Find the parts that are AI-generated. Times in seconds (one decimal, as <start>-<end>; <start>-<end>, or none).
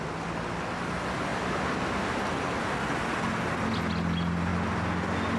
none